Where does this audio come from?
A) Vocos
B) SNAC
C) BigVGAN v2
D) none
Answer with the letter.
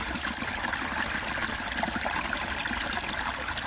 D